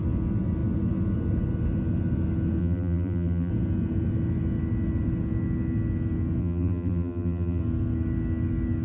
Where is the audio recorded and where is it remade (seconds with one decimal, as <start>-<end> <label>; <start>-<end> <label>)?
0.0-2.6 recorded; 2.6-3.5 remade; 3.5-6.4 recorded; 6.4-7.6 remade; 7.6-8.8 recorded